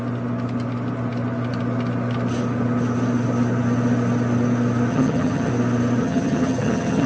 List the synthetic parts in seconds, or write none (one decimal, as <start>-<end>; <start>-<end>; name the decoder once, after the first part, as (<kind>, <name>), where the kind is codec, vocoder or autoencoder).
4.9-5.5 (vocoder, HiFi-GAN); 6.0-7.1